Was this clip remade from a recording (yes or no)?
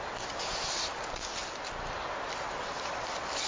no